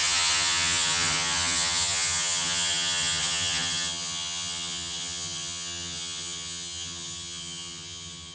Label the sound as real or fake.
fake